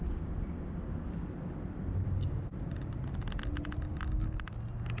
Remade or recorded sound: recorded